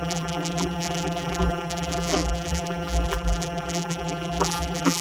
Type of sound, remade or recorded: remade